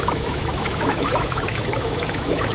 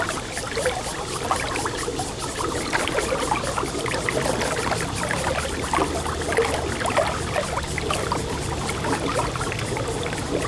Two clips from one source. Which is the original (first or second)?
second